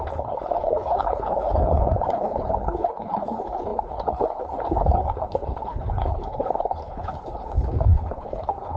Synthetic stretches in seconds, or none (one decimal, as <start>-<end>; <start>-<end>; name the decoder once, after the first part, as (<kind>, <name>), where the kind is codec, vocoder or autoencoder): 0.0-8.8 (codec, HILCodec)